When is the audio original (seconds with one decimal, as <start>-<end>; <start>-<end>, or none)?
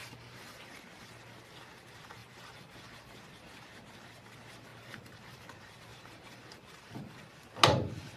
0.7-2.2; 2.8-4.7; 5.4-5.9; 7.2-8.2